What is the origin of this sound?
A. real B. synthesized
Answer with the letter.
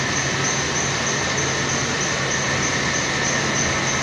A